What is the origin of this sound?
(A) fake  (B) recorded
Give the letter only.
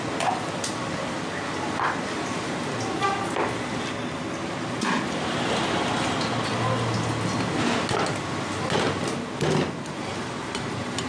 B